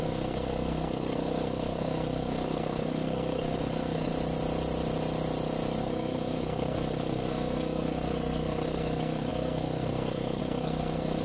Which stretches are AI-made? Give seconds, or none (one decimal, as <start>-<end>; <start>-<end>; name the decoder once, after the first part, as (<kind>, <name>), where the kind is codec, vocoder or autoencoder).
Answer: 0.0-4.1 (codec, SNAC); 5.8-11.2